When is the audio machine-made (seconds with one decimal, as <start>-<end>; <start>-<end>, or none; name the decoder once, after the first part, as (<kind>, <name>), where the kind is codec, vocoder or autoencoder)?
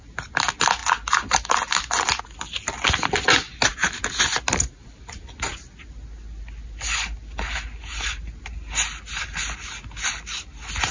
none